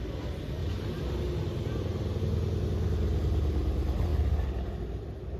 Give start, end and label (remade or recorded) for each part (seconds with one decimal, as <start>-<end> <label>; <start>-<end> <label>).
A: 0.0-0.6 recorded; 0.6-2.2 remade; 2.2-5.4 recorded